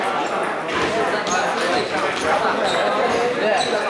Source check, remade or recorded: recorded